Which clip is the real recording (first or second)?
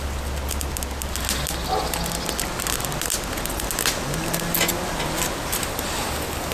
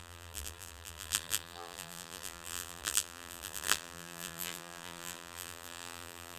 first